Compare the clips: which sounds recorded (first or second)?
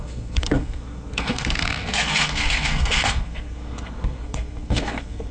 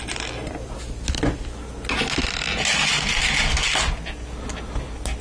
second